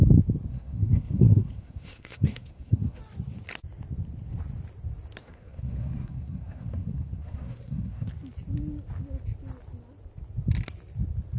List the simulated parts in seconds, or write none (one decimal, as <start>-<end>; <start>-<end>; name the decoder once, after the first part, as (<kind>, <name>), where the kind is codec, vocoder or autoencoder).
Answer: 0.5-3.0 (codec, SNAC); 5.2-8.1

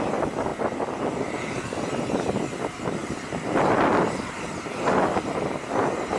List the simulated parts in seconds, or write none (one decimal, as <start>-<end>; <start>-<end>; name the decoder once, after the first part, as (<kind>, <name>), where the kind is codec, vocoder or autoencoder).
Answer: 3.0-4.4 (vocoder, BigVGAN v2)

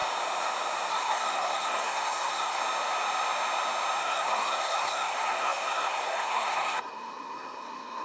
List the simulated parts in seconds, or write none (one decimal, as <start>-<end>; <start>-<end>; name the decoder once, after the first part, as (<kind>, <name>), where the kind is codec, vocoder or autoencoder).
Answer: 0.9-2.6 (codec, SNAC); 4.0-8.0